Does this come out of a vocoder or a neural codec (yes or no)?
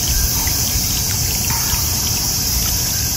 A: yes